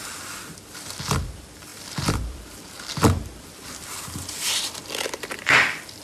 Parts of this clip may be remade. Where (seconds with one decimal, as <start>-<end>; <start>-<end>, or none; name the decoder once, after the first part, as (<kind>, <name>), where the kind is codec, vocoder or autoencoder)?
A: 0.0-6.0 (vocoder, BigVGAN v2)